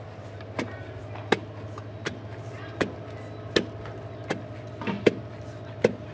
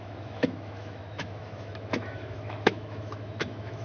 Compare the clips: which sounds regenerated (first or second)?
second